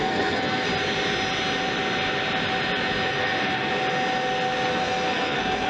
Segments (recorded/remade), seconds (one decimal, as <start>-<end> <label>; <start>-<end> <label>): 0.0-0.7 remade; 0.7-3.1 recorded; 3.1-3.7 remade; 3.7-4.7 recorded; 4.7-5.7 remade